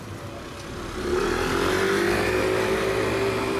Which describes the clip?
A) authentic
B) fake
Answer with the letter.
A